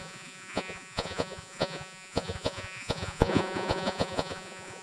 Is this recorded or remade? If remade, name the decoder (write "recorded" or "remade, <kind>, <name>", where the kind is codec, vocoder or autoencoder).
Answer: remade, vocoder, Vocos